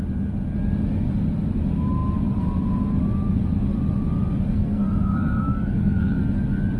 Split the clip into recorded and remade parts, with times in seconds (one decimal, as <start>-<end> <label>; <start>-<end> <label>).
0.0-4.5 recorded; 4.5-6.2 remade; 6.2-6.8 recorded